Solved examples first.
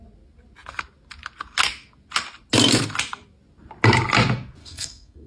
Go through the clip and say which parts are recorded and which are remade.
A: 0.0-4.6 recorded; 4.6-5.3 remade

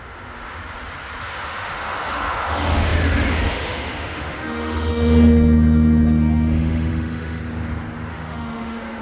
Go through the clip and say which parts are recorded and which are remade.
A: 0.0-0.6 remade; 0.6-1.2 recorded; 1.2-7.4 remade; 7.4-8.1 recorded; 8.1-9.0 remade

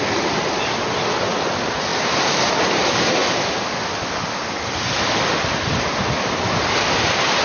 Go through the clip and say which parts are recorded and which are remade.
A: 0.0-7.4 recorded